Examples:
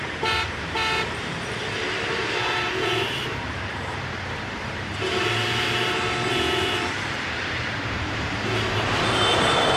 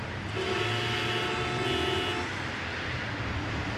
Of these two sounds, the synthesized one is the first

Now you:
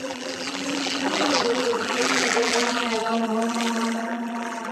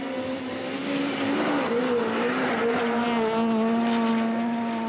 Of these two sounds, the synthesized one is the first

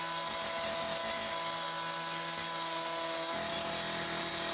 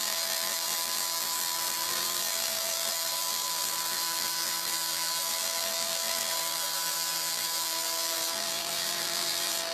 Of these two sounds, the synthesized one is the second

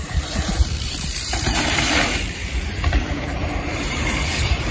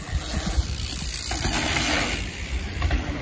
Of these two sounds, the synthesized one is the first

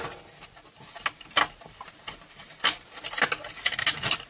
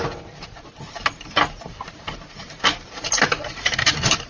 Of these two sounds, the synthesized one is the second